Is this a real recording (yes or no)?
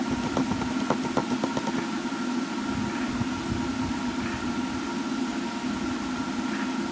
yes